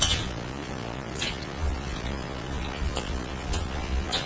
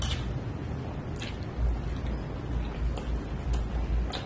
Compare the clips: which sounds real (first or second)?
second